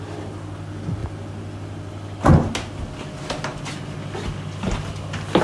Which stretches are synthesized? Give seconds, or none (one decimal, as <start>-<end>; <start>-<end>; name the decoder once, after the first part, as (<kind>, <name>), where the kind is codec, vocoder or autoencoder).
none